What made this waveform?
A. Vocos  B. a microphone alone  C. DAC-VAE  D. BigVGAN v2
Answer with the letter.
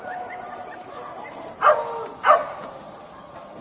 B